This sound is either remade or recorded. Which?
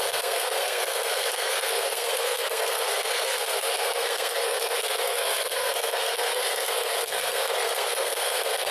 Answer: remade